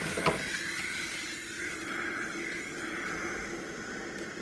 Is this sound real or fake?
real